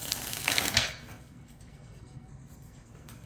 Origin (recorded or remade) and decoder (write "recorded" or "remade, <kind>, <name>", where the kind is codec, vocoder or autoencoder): remade, codec, SNAC